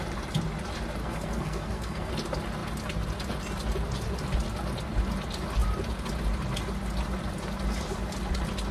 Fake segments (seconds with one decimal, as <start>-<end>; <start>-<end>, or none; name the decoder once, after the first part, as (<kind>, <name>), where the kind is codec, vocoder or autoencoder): 1.0-2.1 (codec, SNAC)